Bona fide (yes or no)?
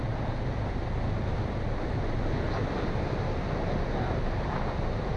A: yes